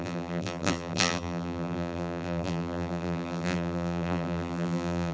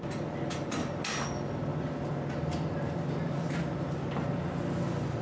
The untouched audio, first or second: second